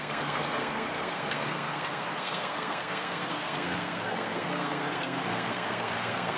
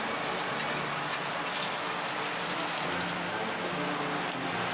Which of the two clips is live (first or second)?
second